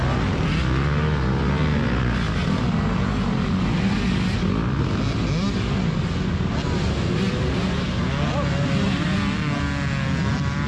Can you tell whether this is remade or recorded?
recorded